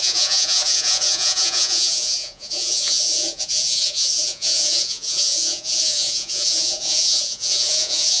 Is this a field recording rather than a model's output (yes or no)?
no